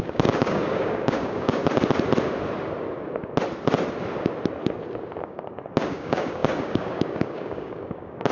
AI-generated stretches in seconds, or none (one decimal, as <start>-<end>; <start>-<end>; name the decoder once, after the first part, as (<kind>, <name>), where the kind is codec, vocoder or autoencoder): 0.0-1.6 (codec, DAC); 5.2-8.3